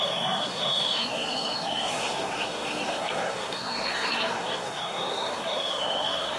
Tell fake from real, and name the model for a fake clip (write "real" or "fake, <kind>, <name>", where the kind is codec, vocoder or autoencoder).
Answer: fake, codec, SNAC